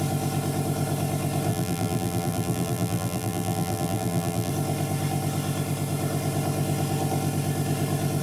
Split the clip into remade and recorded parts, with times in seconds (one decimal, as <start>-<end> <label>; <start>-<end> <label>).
0.0-1.5 recorded; 1.5-4.5 remade; 4.5-8.2 recorded